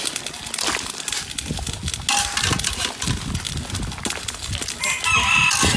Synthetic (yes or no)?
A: no